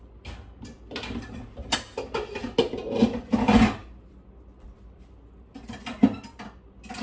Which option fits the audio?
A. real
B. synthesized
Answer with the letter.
A